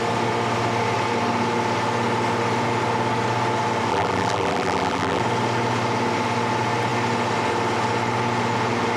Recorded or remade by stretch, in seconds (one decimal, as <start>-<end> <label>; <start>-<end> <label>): 0.0-3.9 recorded; 3.9-5.2 remade; 5.2-9.0 recorded